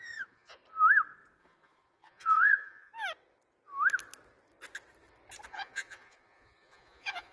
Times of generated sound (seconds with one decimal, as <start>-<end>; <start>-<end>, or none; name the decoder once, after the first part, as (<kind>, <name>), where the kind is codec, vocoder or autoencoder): 0.0-0.6 (vocoder, Vocos); 1.4-2.9; 5.5-7.3